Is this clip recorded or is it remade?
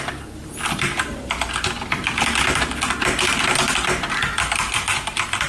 recorded